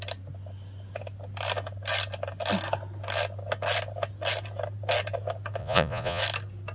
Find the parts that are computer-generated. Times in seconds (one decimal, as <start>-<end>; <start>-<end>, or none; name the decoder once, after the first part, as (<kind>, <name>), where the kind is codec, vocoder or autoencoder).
5.6-6.2 (vocoder, Vocos)